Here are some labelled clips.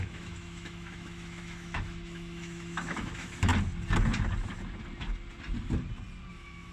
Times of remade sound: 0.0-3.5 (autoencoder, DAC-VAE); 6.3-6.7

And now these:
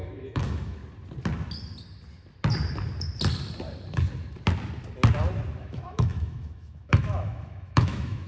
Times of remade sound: 0.0-0.8 (autoencoder, DAC-VAE); 5.6-8.3

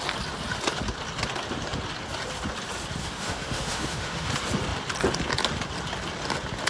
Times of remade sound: 3.0-4.3 (autoencoder, DAC-VAE)

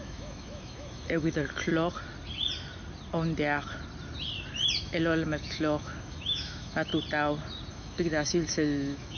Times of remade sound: 0.0-1.7 (autoencoder, DAC-VAE); 4.8-6.9; 7.7-9.2

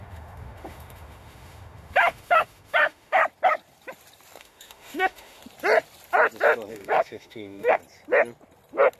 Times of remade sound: 0.0-3.2 (autoencoder, DAC-VAE); 4.4-5.4; 6.7-7.8

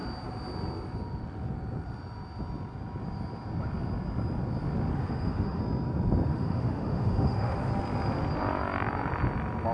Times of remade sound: 4.9-5.6 (autoencoder, DAC-VAE); 6.3-7.7